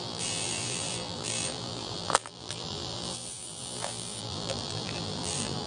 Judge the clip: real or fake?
fake